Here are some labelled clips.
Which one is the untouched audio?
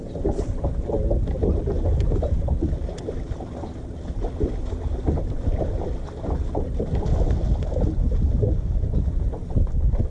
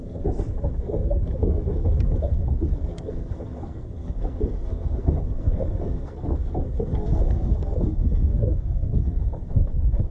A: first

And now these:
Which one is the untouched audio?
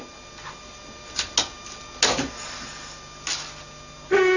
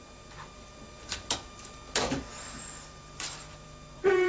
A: first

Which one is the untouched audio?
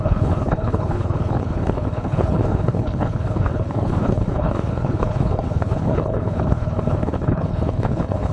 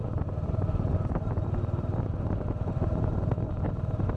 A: second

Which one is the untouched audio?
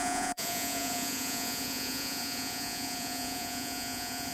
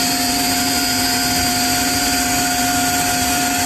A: second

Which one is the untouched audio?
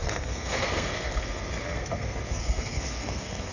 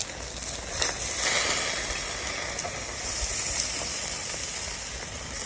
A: second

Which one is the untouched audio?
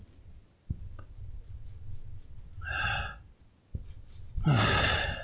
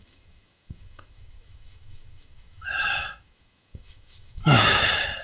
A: first